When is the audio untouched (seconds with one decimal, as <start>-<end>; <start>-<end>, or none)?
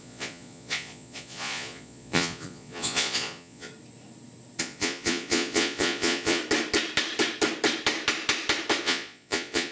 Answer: 3.7-4.6; 6.4-8.8